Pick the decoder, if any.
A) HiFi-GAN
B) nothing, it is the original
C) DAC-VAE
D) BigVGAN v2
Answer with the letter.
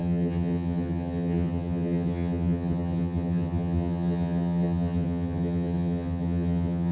A